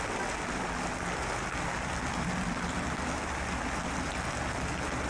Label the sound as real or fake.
real